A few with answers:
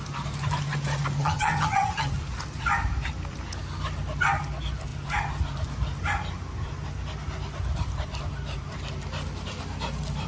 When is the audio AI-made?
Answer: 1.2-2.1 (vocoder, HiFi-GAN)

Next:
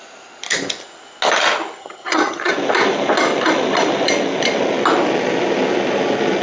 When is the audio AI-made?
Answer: 1.8-2.5 (vocoder, HiFi-GAN)

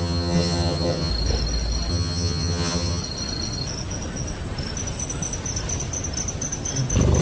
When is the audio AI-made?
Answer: 0.0-1.1 (vocoder, HiFi-GAN); 1.9-3.0

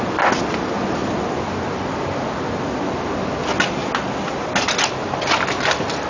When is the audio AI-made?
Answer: none

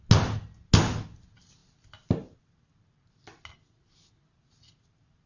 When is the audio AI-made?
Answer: none

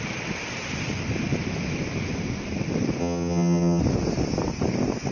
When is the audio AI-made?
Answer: 3.0-3.8 (vocoder, HiFi-GAN)

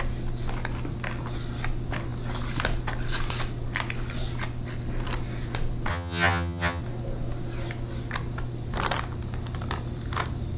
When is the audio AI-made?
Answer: 5.9-6.8 (vocoder, HiFi-GAN)

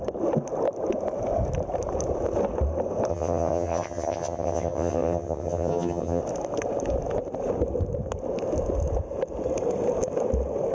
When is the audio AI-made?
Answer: 3.1-6.2 (vocoder, HiFi-GAN)